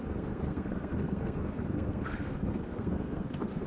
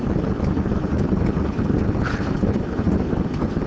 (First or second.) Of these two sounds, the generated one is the first